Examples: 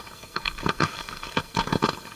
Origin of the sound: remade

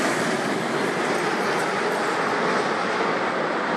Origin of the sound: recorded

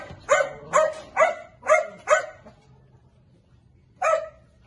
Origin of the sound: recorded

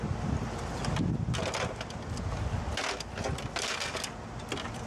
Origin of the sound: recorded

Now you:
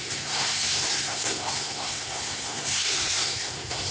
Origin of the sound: remade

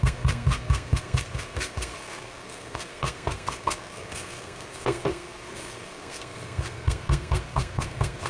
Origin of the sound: remade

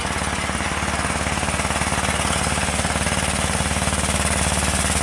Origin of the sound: recorded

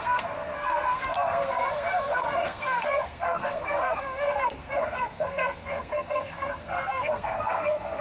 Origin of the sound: remade